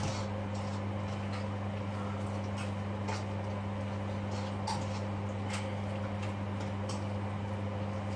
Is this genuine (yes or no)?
yes